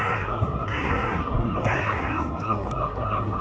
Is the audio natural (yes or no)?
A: no